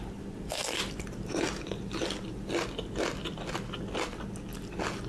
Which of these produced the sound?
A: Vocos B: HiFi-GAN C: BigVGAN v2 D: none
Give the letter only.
D